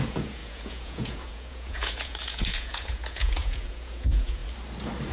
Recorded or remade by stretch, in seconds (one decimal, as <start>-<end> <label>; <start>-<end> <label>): 0.0-4.4 remade; 4.4-5.1 recorded